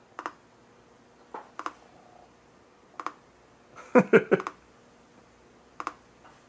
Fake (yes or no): no